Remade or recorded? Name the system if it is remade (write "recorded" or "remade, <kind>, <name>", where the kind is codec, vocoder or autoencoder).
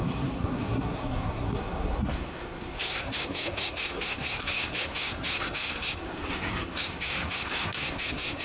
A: remade, codec, SNAC